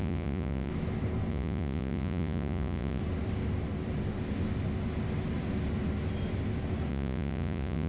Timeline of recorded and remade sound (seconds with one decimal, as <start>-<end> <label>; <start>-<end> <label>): 0.0-0.7 remade; 0.7-1.3 recorded; 1.3-3.0 remade; 3.0-6.9 recorded; 6.9-7.9 remade